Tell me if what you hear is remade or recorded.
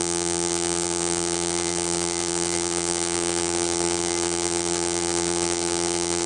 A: remade